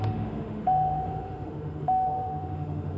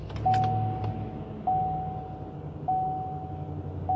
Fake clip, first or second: first